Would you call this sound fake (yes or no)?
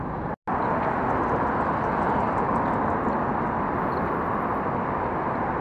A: no